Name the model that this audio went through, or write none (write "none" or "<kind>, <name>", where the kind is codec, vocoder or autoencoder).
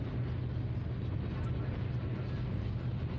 none